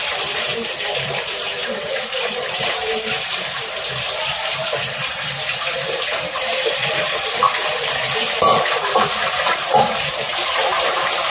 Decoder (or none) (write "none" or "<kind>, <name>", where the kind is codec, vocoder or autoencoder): vocoder, BigVGAN v2